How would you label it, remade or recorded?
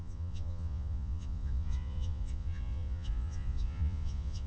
remade